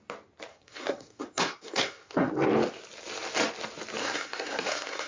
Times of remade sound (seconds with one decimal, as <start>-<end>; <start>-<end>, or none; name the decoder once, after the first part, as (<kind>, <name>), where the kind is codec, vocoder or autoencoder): 0.5-2.3 (codec, SNAC); 4.0-5.1